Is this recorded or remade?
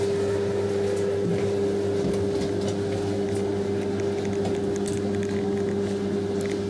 recorded